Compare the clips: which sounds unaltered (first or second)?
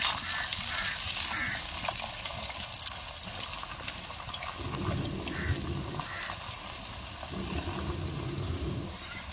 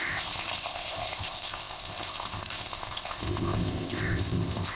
first